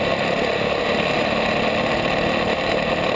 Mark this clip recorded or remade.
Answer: recorded